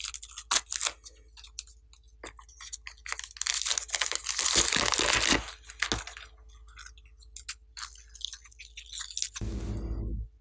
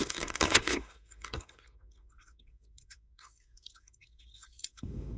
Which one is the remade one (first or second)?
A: second